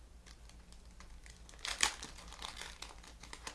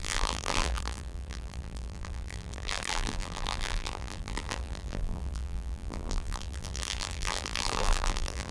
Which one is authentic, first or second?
first